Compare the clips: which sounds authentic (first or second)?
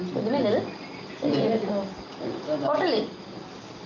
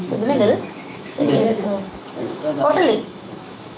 first